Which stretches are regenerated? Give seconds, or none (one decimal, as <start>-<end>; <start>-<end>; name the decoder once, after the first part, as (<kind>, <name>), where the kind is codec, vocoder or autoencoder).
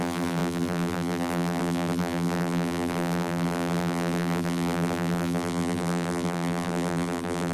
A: 0.0-7.5 (vocoder, BigVGAN v2)